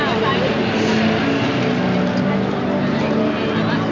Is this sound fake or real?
real